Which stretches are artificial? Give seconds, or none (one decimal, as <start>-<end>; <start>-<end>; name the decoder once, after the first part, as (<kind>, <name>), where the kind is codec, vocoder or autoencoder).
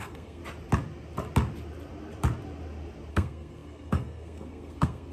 0.0-0.4 (codec, SNAC); 3.1-5.1